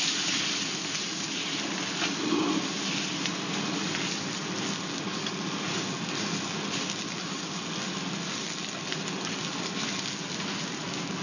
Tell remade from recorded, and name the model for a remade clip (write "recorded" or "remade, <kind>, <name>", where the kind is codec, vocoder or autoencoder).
recorded